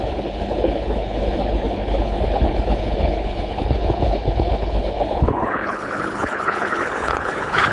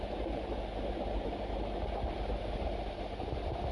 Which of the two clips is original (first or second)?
second